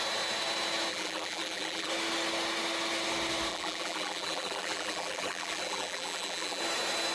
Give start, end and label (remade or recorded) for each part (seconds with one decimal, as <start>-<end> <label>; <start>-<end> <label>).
0.0-0.9 recorded; 0.9-1.9 remade; 1.9-3.5 recorded; 3.5-6.6 remade; 6.6-7.1 recorded